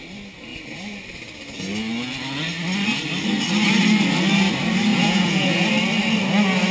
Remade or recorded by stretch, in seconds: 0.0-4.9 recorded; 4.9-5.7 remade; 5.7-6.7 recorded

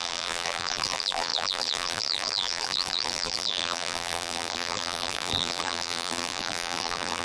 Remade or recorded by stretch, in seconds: 0.0-7.2 remade

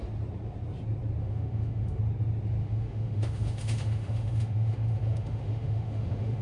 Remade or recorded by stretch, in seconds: 0.0-1.2 recorded; 1.2-2.0 remade; 2.0-2.6 recorded; 2.6-6.4 remade

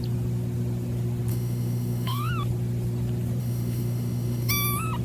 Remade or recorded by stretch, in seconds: 0.0-1.3 recorded; 1.3-2.3 remade; 2.3-3.4 recorded; 3.4-4.5 remade; 4.5-5.0 recorded

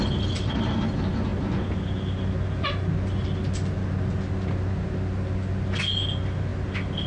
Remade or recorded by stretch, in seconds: 0.0-7.1 recorded